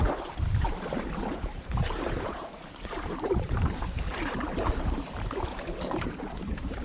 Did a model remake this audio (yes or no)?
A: yes